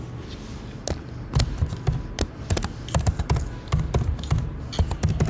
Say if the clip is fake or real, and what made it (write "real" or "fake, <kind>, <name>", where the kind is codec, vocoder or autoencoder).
real